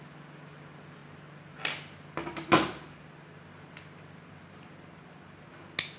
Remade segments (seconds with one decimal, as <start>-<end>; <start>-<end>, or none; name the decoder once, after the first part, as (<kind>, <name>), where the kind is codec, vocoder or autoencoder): none